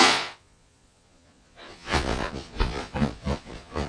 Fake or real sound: fake